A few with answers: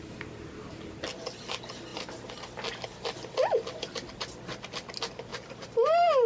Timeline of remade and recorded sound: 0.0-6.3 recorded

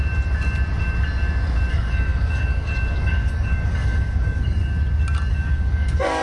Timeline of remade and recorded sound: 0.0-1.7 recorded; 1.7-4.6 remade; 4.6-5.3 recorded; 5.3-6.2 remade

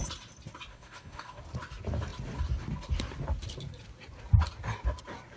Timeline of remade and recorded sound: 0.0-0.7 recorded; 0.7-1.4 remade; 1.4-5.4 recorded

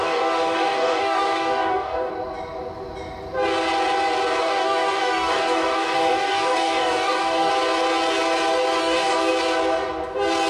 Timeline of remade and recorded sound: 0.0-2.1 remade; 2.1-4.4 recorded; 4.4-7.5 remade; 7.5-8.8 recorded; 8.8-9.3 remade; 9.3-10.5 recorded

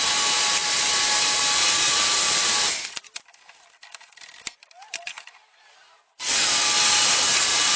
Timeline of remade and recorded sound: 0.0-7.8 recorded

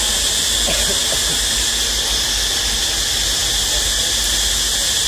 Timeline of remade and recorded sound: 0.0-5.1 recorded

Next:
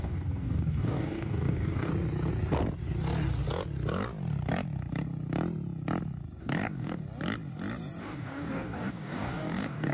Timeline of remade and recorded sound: 0.0-1.9 remade; 1.9-6.4 recorded; 6.4-7.0 remade; 7.0-8.0 recorded; 8.0-9.9 remade